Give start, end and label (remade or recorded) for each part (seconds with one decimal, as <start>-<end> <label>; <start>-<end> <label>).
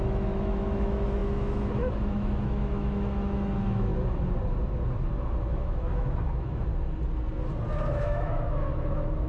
0.0-3.9 remade; 3.9-5.4 recorded; 5.4-6.7 remade; 6.7-7.9 recorded; 7.9-9.3 remade